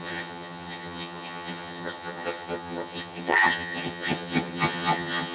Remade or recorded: remade